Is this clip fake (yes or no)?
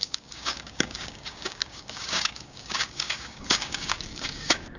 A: yes